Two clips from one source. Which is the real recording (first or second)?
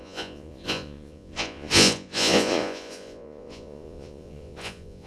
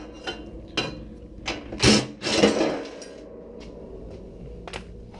second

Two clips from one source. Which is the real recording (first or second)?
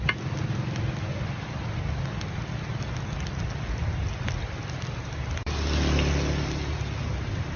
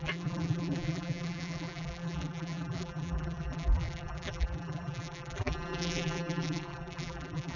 first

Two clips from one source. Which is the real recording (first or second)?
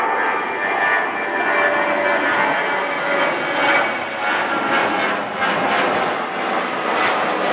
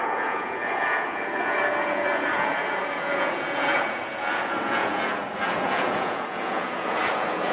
first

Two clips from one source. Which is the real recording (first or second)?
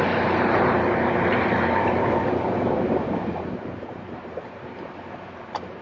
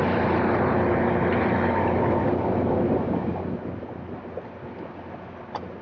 second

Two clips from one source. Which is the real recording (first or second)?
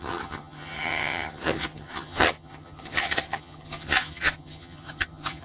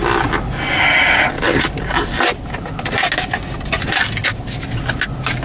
second